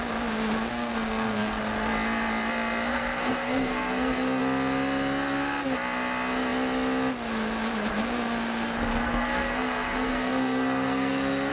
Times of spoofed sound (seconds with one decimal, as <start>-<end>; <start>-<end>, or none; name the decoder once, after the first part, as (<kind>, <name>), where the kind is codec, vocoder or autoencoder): 0.7-1.6 (codec, SNAC); 2.9-4.4; 8.9-11.5

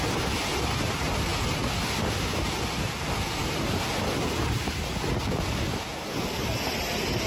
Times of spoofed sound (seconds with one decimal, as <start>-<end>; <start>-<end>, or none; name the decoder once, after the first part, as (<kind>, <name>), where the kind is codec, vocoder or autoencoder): none